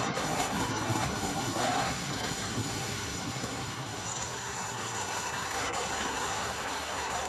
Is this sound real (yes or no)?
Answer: no